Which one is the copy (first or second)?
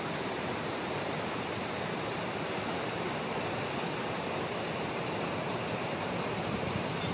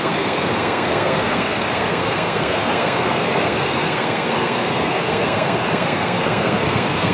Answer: second